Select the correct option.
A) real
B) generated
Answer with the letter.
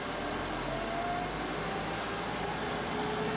A